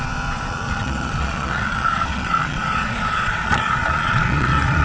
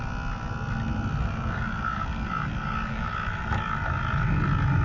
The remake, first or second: first